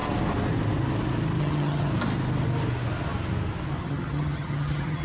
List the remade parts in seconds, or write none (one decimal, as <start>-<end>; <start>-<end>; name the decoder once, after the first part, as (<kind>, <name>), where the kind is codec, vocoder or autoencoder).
1.4-1.9 (vocoder, HiFi-GAN); 3.8-5.0